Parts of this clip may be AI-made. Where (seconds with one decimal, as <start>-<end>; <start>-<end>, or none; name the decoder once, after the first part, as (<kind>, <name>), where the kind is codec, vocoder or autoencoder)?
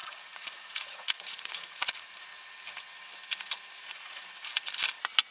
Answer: 0.0-2.3 (vocoder, Vocos); 3.8-4.5